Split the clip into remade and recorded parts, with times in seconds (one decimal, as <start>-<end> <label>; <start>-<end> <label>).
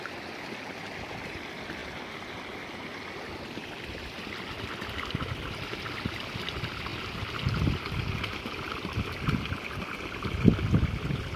0.0-11.4 recorded